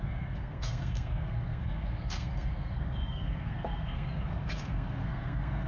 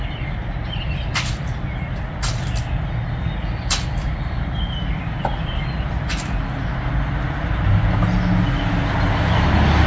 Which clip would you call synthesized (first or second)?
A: first